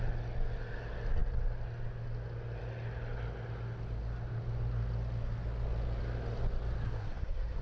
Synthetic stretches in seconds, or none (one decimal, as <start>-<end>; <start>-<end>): 6.8-7.6